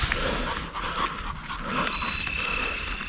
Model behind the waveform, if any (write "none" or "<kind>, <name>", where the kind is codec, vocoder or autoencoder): none